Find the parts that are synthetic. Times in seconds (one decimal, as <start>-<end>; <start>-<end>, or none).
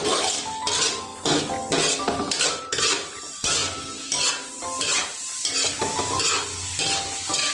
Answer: none